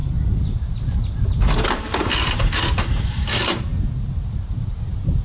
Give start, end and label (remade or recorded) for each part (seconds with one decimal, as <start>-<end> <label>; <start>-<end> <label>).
0.0-1.9 recorded; 1.9-5.2 remade